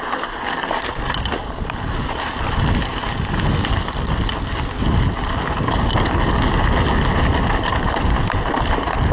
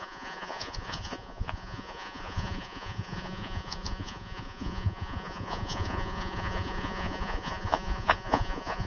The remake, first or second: second